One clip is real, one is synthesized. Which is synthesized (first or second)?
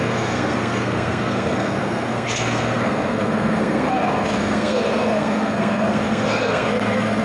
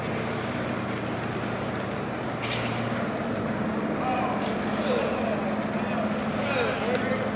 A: first